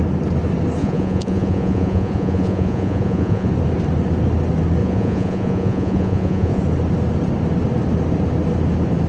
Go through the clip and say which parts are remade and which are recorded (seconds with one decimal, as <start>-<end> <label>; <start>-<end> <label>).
0.0-0.8 recorded; 0.8-3.5 remade; 3.5-4.8 recorded; 4.8-6.6 remade; 6.6-9.1 recorded